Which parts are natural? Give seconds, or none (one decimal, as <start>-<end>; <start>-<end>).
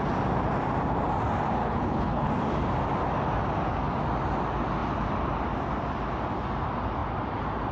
0.0-1.6; 2.3-7.7